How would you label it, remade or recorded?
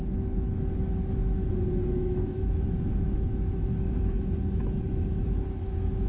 remade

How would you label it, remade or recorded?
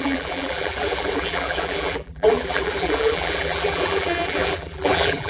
remade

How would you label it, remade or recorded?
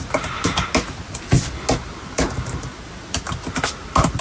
recorded